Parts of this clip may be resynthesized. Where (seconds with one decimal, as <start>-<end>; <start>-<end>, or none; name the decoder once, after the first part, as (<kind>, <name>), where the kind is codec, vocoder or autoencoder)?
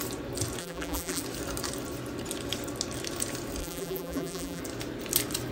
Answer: 0.6-1.2 (vocoder, BigVGAN v2); 3.6-4.6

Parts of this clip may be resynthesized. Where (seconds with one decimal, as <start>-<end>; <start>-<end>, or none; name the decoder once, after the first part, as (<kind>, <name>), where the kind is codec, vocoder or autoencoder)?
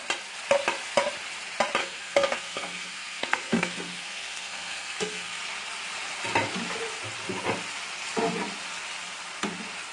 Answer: 1.8-5.4 (codec, SNAC)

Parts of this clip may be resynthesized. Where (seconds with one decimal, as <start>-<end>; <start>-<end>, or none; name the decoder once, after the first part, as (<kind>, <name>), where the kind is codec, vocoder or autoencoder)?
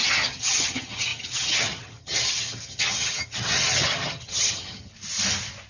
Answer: 0.0-4.9 (vocoder, HiFi-GAN)